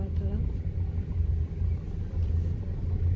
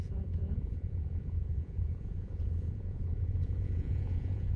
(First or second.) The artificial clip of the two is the second